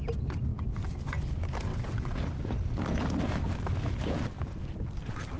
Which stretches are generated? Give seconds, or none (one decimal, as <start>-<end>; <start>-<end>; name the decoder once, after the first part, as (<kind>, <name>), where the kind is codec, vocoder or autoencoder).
1.7-2.2 (vocoder, WaveNeXt)